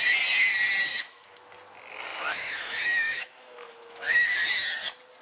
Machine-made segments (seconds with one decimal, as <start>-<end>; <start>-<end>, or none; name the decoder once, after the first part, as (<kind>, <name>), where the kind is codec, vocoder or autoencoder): 0.9-1.5 (autoencoder, DAC-VAE); 2.1-4.5